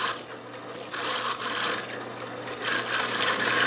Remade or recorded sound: recorded